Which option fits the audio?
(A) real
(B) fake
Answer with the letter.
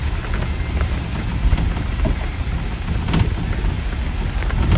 A